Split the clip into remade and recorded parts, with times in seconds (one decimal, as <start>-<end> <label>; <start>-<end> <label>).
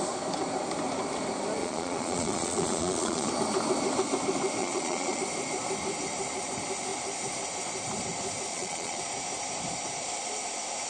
0.0-1.6 recorded; 1.6-3.3 remade; 3.3-4.6 recorded; 4.6-5.2 remade; 5.2-8.5 recorded; 8.5-9.0 remade; 9.0-10.9 recorded